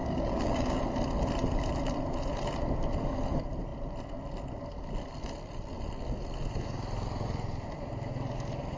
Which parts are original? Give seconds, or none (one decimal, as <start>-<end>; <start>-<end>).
0.8-8.8